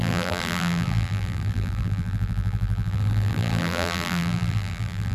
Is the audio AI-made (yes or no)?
yes